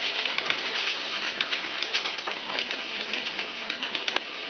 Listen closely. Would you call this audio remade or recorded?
remade